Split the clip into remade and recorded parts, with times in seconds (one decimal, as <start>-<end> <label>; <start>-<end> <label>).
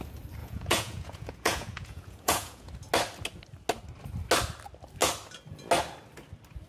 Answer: 0.0-0.4 recorded; 0.4-2.7 remade; 2.7-6.7 recorded